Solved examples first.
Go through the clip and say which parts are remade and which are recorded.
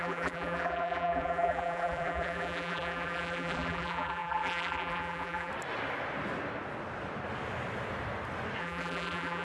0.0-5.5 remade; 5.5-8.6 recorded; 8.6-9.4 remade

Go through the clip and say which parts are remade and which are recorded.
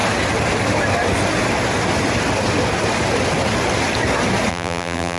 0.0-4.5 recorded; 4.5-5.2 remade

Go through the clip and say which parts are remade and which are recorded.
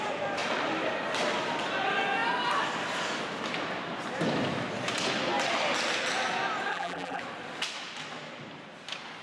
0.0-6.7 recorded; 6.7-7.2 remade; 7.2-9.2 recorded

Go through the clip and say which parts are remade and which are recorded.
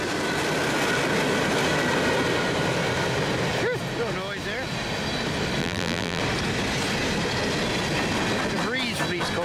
0.0-5.6 recorded; 5.6-6.2 remade; 6.2-9.4 recorded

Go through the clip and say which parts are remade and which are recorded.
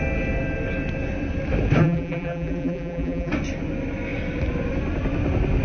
0.0-1.8 recorded; 1.8-3.3 remade; 3.3-5.6 recorded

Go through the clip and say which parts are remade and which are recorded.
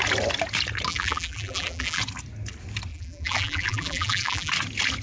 0.0-0.9 recorded; 0.9-2.0 remade; 2.0-2.9 recorded; 2.9-4.5 remade; 4.5-5.0 recorded